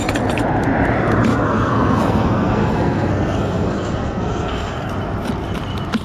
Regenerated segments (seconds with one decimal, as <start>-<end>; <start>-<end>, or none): 1.3-4.9